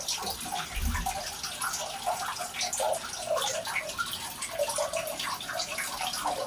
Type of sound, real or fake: real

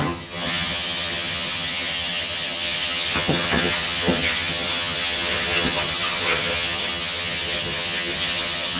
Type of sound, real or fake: fake